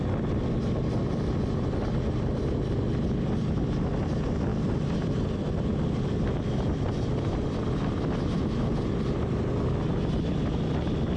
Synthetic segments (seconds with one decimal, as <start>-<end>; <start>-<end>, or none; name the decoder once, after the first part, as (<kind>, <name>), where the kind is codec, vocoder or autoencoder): 4.5-8.4 (vocoder, BigVGAN v2)